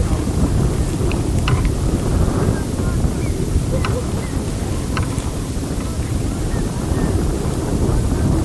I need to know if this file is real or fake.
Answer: real